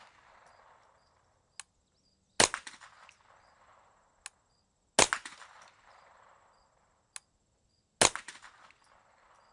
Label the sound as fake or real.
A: real